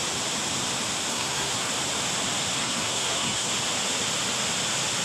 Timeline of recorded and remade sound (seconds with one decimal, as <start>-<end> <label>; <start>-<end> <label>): 0.0-1.1 recorded; 1.1-1.7 remade; 1.7-2.6 recorded; 2.6-3.5 remade; 3.5-5.0 recorded